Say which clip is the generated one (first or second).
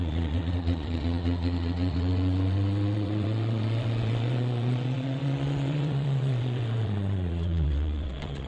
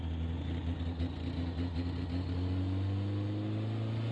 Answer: first